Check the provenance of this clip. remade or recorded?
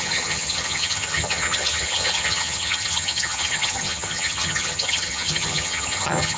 remade